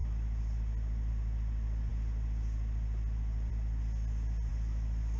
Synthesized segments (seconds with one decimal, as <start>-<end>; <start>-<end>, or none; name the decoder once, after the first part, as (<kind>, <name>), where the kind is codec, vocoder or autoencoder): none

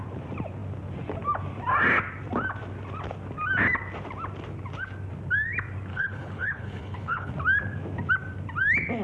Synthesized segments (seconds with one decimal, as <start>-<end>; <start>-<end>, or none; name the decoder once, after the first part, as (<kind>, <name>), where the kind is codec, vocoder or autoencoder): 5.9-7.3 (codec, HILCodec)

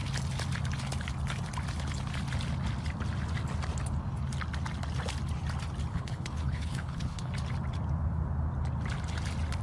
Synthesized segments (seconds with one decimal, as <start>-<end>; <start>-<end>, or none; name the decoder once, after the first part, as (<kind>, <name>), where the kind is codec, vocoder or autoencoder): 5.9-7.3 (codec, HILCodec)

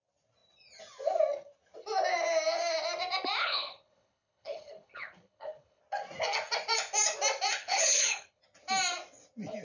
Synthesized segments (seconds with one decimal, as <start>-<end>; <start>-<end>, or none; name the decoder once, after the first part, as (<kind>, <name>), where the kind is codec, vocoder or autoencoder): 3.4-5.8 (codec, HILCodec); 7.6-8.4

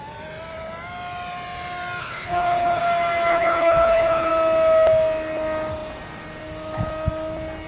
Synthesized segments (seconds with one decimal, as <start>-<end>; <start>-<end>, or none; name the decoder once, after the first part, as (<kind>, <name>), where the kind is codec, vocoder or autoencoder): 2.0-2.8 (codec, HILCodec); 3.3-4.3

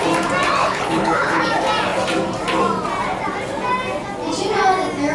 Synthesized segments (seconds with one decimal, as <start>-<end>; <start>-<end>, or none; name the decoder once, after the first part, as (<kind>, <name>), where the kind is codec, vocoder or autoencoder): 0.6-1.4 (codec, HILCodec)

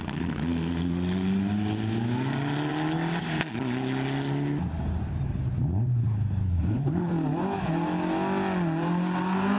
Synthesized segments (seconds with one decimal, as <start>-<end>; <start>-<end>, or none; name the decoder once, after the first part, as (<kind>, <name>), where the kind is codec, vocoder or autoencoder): 6.4-7.1 (codec, HILCodec)

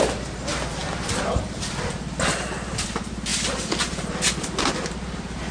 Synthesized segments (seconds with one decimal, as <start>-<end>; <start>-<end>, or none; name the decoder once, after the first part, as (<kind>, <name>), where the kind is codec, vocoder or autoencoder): none